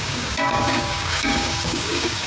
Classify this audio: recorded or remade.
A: remade